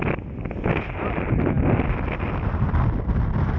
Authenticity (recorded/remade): recorded